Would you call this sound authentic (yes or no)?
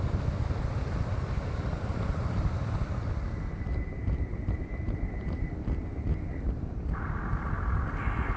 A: yes